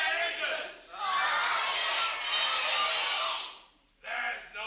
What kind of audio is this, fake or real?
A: real